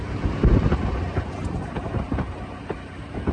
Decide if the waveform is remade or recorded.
remade